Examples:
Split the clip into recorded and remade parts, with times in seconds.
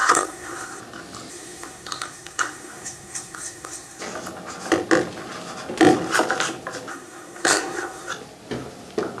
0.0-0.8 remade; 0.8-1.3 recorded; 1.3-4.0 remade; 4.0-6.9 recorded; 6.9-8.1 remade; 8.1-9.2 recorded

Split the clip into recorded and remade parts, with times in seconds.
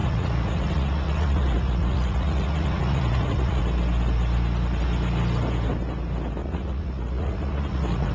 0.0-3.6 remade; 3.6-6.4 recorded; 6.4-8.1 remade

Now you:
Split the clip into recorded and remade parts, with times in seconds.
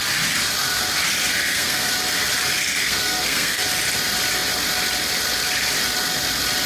0.0-1.3 recorded; 1.3-1.9 remade; 1.9-2.8 recorded; 2.8-3.7 remade; 3.7-6.7 recorded